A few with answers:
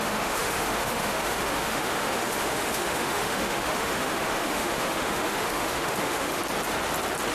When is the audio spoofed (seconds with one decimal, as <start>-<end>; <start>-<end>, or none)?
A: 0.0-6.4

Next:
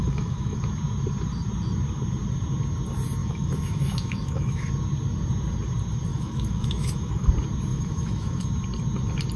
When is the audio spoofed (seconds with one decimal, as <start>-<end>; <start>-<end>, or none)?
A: 0.0-0.6; 3.2-4.7; 6.1-7.3; 7.7-8.5

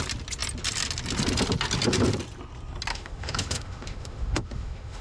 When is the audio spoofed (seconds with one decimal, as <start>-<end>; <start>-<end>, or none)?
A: 2.9-5.0